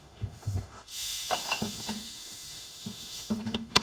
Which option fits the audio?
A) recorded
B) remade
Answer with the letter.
B